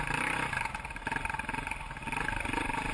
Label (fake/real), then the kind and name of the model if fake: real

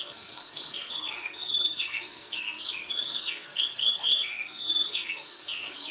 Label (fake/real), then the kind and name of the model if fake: fake, codec, SNAC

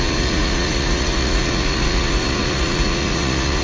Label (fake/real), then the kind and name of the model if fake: fake, vocoder, Vocos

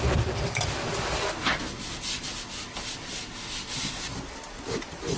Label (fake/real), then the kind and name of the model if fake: real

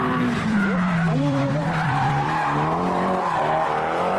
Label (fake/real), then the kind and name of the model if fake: fake, vocoder, BigVGAN v2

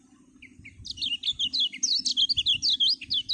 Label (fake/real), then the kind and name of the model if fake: real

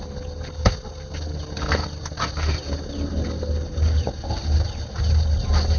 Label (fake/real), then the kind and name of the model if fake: real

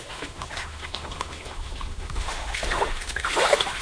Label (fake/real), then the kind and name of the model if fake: fake, autoencoder, DAC-VAE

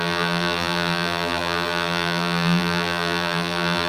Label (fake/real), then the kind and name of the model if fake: fake, vocoder, BigVGAN v2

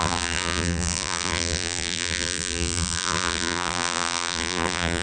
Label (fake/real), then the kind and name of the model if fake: fake, vocoder, BigVGAN v2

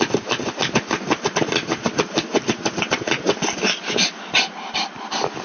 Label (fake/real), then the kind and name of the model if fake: real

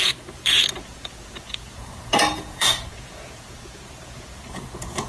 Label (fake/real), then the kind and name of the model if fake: fake, vocoder, Vocos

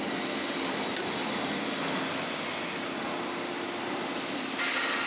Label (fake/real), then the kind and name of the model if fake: real